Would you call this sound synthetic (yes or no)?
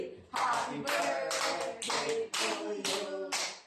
no